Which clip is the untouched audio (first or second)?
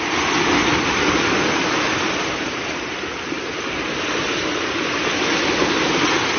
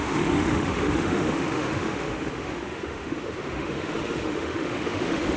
first